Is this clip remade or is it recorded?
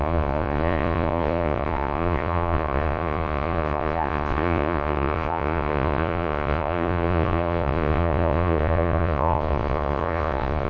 remade